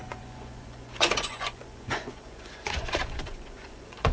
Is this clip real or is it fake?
fake